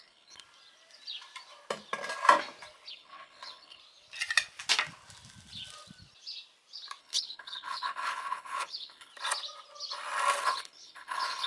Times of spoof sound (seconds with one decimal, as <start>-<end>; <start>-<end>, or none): 0.0-0.4; 2.9-3.8; 7.0-9.1; 10.4-11.5